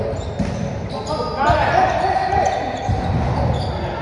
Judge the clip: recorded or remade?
recorded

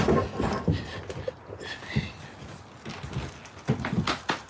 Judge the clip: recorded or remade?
recorded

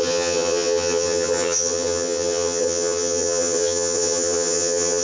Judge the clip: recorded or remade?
remade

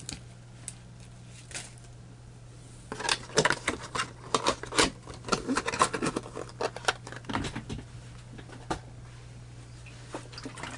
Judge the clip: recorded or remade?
recorded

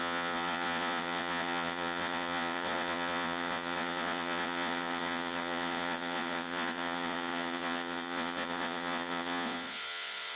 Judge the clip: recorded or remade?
remade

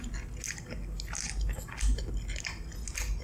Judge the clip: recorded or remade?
recorded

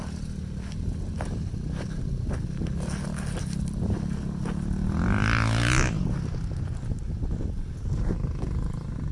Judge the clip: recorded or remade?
recorded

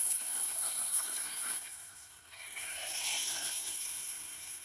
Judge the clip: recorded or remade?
remade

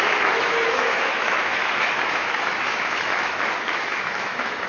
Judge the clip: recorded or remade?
remade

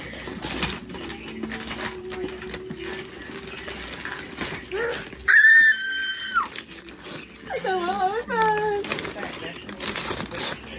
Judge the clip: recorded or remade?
recorded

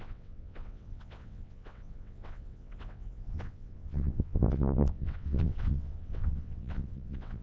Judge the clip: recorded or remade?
remade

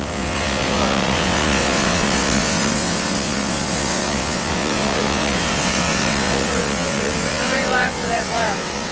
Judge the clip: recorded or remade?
remade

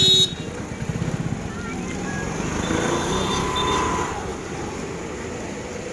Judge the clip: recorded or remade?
recorded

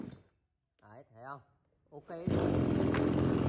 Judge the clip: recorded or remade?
recorded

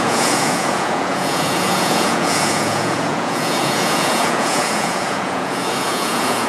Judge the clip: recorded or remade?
remade